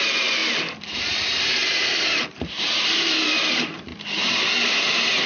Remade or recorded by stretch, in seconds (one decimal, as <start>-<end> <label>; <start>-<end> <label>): 0.0-3.9 remade; 3.9-4.6 recorded; 4.6-5.3 remade